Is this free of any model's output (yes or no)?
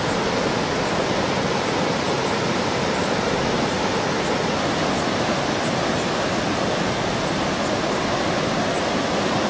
yes